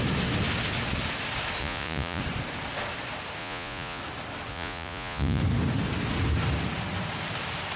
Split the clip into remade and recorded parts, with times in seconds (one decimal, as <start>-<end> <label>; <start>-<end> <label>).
0.0-1.6 recorded; 1.6-2.2 remade; 2.2-3.4 recorded; 3.4-4.0 remade; 4.0-4.5 recorded; 4.5-5.4 remade; 5.4-7.8 recorded